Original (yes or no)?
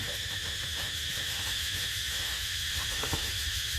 no